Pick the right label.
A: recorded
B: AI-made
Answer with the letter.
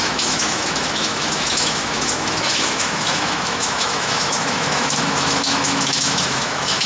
B